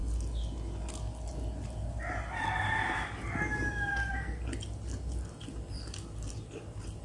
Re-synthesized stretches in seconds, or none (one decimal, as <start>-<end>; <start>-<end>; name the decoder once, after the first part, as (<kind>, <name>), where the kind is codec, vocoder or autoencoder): 3.9-4.4 (codec, SNAC)